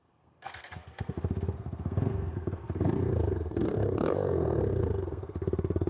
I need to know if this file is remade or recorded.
remade